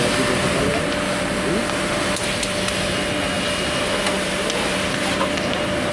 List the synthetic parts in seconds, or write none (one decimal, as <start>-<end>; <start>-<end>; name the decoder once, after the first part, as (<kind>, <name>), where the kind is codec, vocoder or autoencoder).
none